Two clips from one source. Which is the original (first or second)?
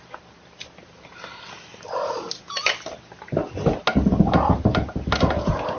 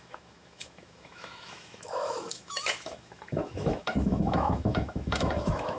first